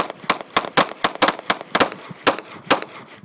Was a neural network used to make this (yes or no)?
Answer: no